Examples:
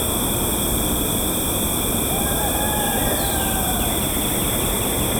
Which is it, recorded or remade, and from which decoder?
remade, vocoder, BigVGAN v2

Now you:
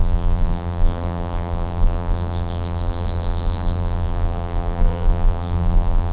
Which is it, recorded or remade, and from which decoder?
remade, vocoder, BigVGAN v2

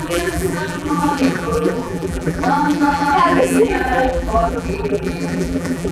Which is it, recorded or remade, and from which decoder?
remade, vocoder, BigVGAN v2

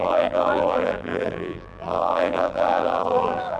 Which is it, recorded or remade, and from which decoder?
remade, vocoder, BigVGAN v2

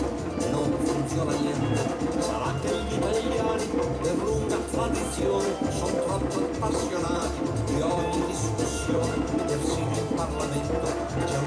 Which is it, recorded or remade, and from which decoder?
remade, vocoder, BigVGAN v2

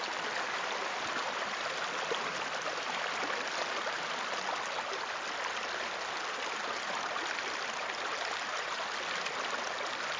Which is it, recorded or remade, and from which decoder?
recorded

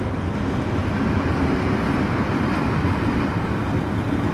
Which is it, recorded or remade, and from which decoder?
recorded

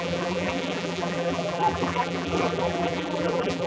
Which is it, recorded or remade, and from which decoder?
remade, vocoder, BigVGAN v2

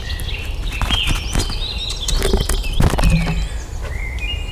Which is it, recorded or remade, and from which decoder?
recorded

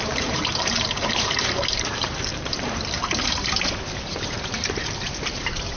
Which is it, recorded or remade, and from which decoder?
remade, vocoder, BigVGAN v2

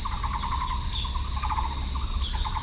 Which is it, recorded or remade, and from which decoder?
recorded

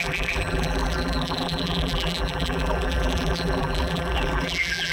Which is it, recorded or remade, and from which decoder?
remade, vocoder, BigVGAN v2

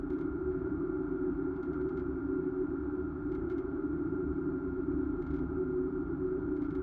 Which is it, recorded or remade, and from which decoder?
remade, vocoder, BigVGAN v2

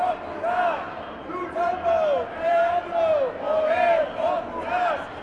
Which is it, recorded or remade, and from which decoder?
recorded